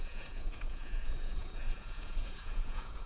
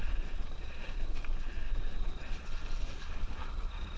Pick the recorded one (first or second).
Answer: second